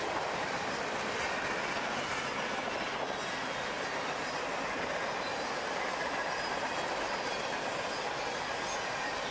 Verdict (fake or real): real